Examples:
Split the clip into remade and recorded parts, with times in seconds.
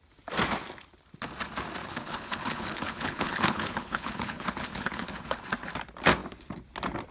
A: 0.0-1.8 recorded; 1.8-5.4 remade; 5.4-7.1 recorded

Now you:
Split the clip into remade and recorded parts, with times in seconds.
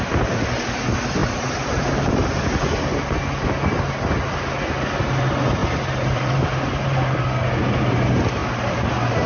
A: 0.0-1.2 recorded; 1.2-2.1 remade; 2.1-5.6 recorded; 5.6-7.2 remade; 7.2-8.4 recorded; 8.4-8.9 remade; 8.9-9.3 recorded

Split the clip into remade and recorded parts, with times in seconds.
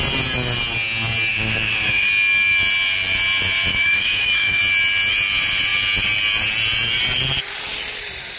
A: 0.0-1.3 recorded; 1.3-2.1 remade; 2.1-3.7 recorded; 3.7-4.6 remade; 4.6-8.4 recorded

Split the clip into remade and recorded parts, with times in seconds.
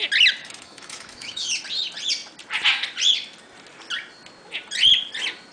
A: 0.0-0.4 recorded; 0.4-1.5 remade; 1.5-5.5 recorded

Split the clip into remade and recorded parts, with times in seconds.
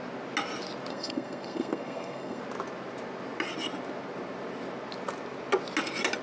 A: 0.0-0.9 recorded; 0.9-2.4 remade; 2.4-6.2 recorded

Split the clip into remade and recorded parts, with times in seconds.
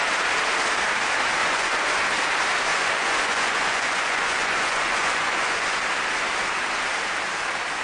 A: 0.0-1.4 recorded; 1.4-2.0 remade; 2.0-2.7 recorded; 2.7-5.8 remade; 5.8-7.8 recorded